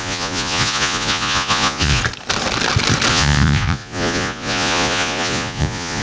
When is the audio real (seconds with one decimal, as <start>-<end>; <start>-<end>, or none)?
2.0-3.1